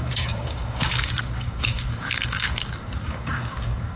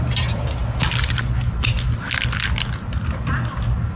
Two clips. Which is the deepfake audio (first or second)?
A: first